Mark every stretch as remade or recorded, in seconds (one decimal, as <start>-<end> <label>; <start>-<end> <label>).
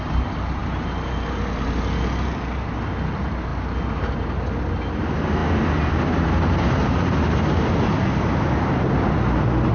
0.0-9.7 recorded